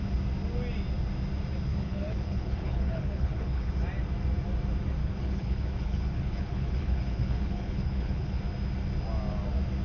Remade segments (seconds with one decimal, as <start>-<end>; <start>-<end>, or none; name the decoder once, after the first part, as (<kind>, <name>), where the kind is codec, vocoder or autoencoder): 1.7-3.7 (codec, HILCodec); 5.0-8.4